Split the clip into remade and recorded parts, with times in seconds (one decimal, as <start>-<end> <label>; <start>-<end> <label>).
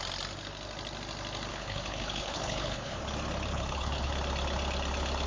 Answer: 0.0-1.5 recorded; 1.5-3.0 remade; 3.0-3.5 recorded; 3.5-4.1 remade; 4.1-5.3 recorded